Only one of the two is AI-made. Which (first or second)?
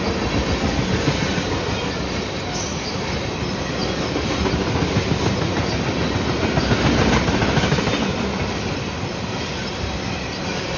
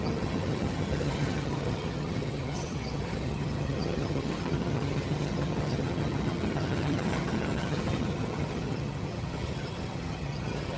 second